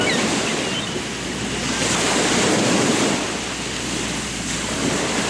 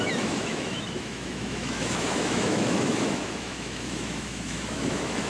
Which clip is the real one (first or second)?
first